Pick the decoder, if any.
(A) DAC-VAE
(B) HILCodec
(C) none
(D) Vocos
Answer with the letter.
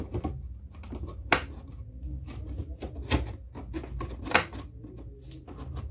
C